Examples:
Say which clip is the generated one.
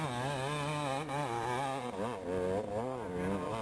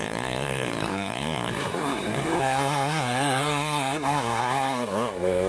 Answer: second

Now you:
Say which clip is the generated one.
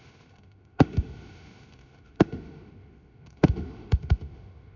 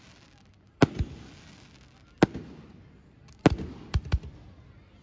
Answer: first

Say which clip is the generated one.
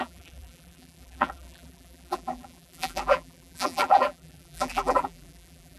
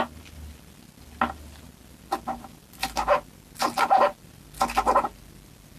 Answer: first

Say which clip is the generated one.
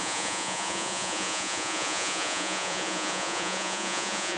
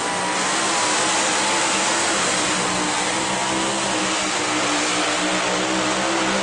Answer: first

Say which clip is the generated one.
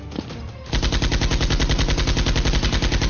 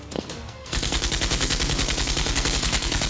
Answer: second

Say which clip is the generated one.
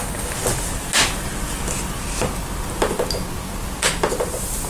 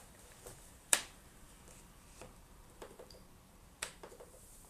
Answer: second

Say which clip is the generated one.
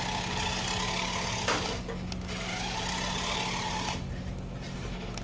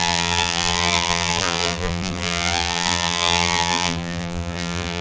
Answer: second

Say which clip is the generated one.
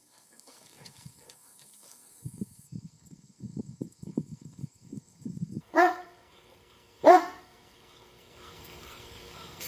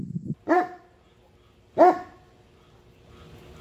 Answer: first